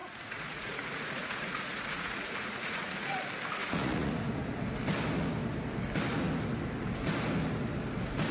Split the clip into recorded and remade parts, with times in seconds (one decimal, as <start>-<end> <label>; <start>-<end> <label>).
0.0-3.2 remade; 3.2-3.6 recorded; 3.6-4.1 remade; 4.1-8.3 recorded